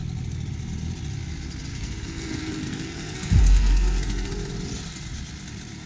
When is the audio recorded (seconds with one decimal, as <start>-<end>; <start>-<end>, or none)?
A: 0.0-1.7; 4.3-5.9